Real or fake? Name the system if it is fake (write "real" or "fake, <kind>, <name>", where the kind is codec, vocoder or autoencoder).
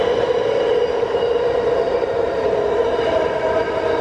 real